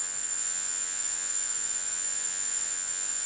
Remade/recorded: remade